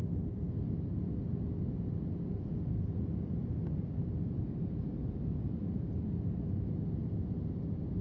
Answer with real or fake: real